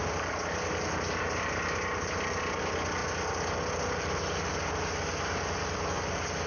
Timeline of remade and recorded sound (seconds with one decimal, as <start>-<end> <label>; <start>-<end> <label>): 0.0-6.5 recorded